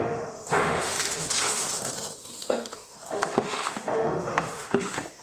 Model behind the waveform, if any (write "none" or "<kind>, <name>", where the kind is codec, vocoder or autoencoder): autoencoder, DAC-VAE